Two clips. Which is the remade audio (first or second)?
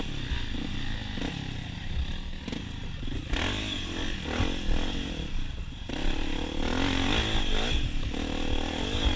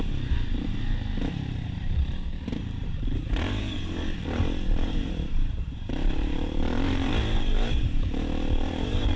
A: second